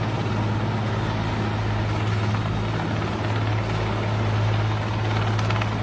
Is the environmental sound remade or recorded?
recorded